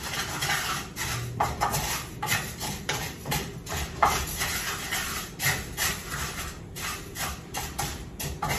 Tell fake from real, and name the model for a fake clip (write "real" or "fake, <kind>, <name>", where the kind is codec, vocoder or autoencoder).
real